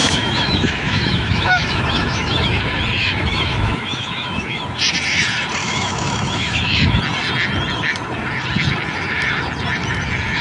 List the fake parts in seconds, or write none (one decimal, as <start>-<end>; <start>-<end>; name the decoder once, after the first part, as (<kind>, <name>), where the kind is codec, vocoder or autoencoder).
0.0-2.6 (autoencoder, DAC-VAE); 3.0-4.6; 5.6-7.0